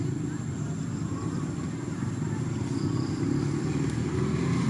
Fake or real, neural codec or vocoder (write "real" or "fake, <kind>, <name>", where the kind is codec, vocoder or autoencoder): real